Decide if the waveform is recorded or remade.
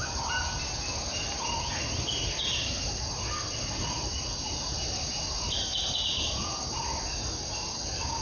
recorded